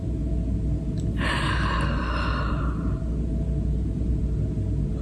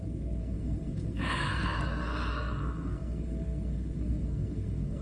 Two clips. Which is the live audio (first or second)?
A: first